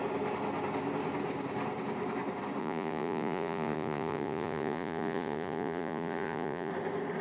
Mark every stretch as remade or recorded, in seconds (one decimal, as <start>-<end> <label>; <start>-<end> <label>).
0.0-2.6 recorded; 2.6-6.7 remade; 6.7-7.2 recorded